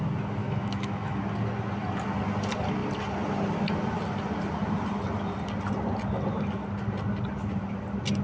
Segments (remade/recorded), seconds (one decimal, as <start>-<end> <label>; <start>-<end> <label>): 0.0-0.4 recorded; 0.4-1.2 remade; 1.2-8.2 recorded